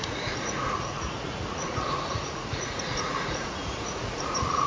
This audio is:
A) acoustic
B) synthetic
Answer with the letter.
B